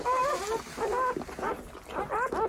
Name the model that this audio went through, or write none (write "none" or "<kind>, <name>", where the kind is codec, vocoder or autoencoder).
none